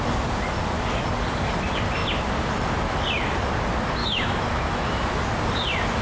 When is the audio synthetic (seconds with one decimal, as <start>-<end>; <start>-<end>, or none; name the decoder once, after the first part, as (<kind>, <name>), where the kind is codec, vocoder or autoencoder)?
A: 4.0-5.2 (autoencoder, DAC-VAE)